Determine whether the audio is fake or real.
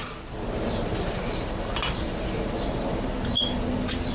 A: real